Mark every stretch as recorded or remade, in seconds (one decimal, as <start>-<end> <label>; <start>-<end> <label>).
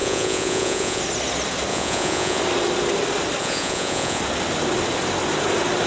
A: 0.0-1.0 remade; 1.0-1.7 recorded; 1.7-2.4 remade; 2.4-3.4 recorded; 3.4-4.2 remade; 4.2-5.9 recorded